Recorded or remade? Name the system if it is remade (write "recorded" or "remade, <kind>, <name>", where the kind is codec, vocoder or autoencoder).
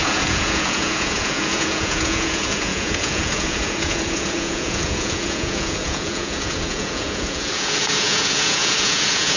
remade, vocoder, Vocos